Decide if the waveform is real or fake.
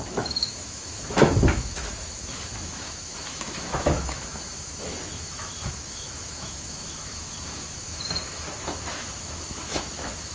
fake